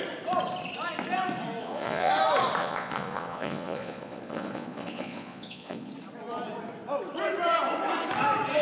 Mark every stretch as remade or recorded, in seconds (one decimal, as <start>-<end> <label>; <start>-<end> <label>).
0.0-1.6 recorded; 1.6-2.1 remade; 2.1-2.6 recorded; 2.6-5.9 remade; 5.9-8.6 recorded